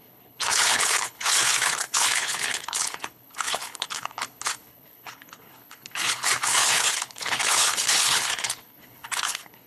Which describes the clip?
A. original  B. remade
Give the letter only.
B